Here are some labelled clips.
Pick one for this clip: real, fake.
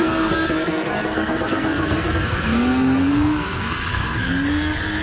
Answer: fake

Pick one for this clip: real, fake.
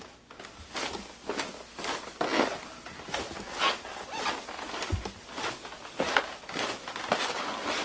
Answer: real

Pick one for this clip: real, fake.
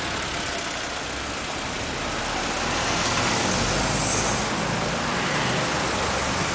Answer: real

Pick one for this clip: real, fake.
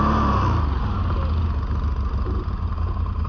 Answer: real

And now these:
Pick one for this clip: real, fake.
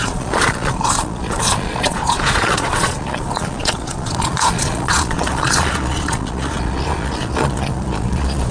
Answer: fake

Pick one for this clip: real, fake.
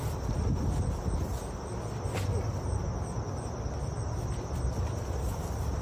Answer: real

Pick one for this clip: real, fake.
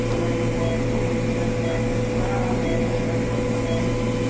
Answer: real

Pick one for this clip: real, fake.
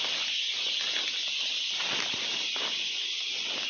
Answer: real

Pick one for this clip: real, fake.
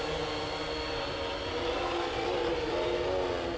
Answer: real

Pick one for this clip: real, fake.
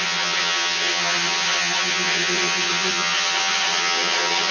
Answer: fake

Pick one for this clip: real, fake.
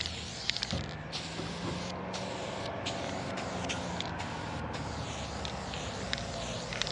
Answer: real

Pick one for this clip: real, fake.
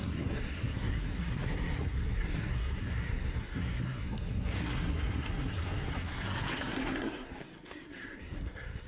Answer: fake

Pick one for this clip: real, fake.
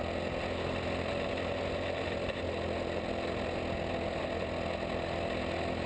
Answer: real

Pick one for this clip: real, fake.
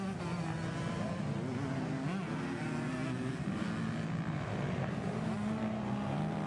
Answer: real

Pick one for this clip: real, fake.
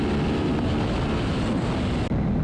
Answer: real